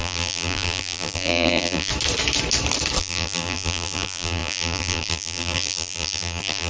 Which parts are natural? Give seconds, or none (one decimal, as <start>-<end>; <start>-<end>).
1.9-3.0